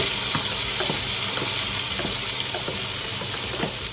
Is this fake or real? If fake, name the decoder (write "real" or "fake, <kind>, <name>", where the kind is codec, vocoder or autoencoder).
real